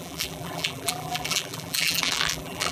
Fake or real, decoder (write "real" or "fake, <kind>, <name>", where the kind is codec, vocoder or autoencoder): fake, vocoder, BigVGAN v2